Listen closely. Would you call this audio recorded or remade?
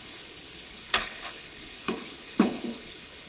remade